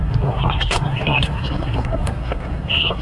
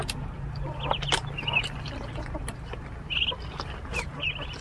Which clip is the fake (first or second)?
first